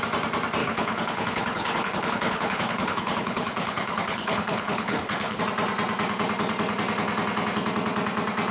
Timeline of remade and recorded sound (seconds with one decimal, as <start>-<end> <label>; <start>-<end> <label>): 0.0-0.6 recorded; 0.6-5.4 remade; 5.4-8.5 recorded